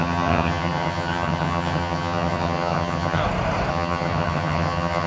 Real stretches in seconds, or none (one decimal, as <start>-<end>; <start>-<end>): 3.2-3.7